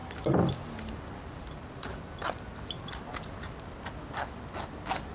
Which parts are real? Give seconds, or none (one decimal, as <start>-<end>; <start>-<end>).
0.0-5.1